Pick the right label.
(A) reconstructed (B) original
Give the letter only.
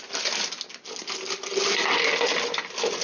B